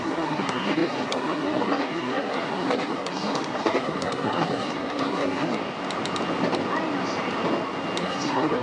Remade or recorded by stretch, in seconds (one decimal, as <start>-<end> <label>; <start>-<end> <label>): 0.0-5.6 remade; 5.6-8.0 recorded; 8.0-8.6 remade